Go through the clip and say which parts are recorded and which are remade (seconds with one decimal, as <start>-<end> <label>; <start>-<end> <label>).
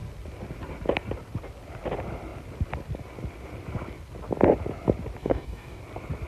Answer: 0.0-5.2 recorded; 5.2-5.8 remade; 5.8-6.3 recorded